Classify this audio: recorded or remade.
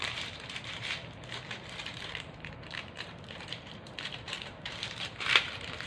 remade